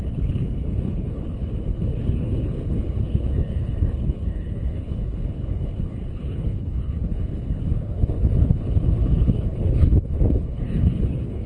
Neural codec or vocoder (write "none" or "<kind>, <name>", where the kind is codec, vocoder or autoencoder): codec, HILCodec